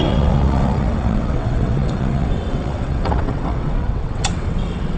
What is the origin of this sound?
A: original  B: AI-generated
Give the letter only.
B